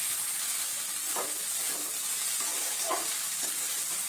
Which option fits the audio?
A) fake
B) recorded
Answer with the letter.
B